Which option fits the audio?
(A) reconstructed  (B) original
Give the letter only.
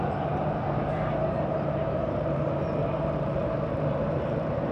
A